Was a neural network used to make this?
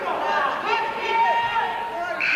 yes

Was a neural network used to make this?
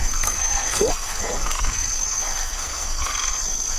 yes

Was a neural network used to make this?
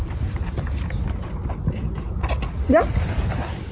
no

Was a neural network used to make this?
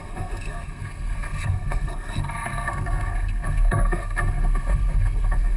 yes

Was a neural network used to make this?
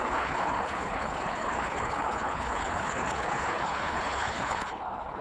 yes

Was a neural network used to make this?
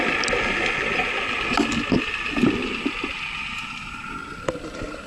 no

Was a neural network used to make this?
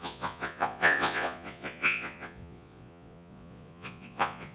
yes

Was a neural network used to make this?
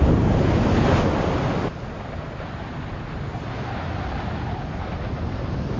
no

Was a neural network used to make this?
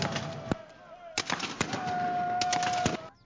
no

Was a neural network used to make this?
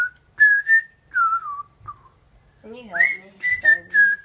no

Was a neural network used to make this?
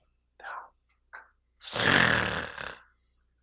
no